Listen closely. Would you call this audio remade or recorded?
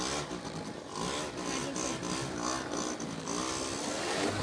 recorded